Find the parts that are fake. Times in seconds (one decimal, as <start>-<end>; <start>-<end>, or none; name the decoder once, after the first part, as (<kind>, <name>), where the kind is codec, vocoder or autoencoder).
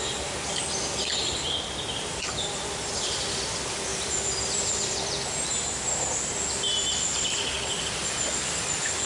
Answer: none